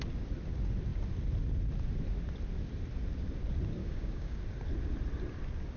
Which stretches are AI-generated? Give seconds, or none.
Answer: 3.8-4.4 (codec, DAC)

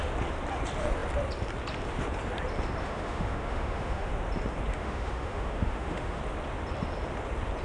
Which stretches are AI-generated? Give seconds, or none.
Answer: 2.8-4.1 (autoencoder, DAC-VAE); 4.7-6.2

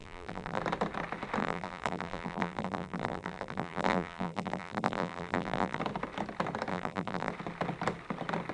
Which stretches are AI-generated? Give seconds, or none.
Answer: 0.0-0.6 (vocoder, BigVGAN v2); 1.4-5.8; 6.7-7.3

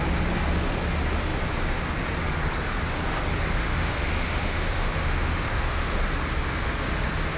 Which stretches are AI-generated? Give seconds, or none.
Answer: 3.7-6.0 (autoencoder, DAC-VAE)

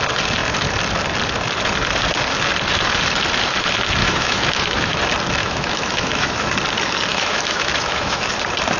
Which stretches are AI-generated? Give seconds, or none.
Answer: 4.0-5.0 (autoencoder, DAC-VAE); 5.4-6.5; 7.1-8.3

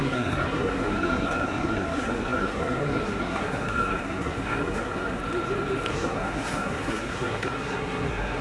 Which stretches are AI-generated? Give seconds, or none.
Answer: 0.0-5.2 (codec, SNAC); 5.9-8.4

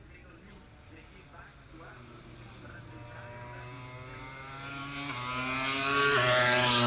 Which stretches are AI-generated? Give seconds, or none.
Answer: none

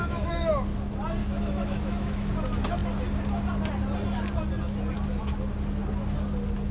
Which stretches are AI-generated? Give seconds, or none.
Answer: 0.0-0.5 (autoencoder, DAC-VAE); 1.2-2.3